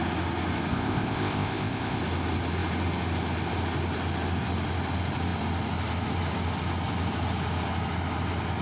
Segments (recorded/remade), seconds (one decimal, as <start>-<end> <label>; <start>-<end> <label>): 0.0-0.7 recorded; 0.7-2.0 remade; 2.0-8.6 recorded